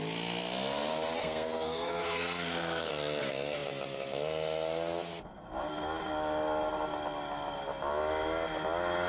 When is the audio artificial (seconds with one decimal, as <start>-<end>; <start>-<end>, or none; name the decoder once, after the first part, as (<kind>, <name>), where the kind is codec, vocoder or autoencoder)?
1.2-2.9 (codec, SNAC)